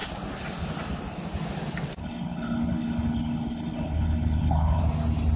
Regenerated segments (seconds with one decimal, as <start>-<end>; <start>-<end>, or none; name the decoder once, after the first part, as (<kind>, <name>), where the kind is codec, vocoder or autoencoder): 2.0-4.8 (codec, HILCodec)